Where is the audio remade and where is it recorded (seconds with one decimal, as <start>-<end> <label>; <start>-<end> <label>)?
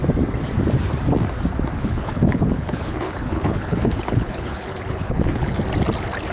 0.0-1.8 recorded; 1.8-5.6 remade; 5.6-6.3 recorded